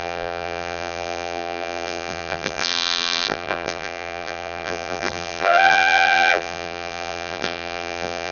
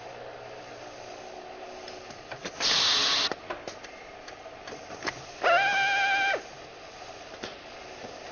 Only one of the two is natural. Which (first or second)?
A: second